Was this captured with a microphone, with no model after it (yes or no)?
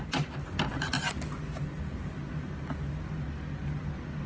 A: yes